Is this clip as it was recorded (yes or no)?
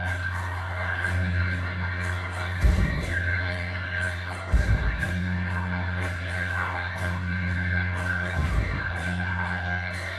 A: no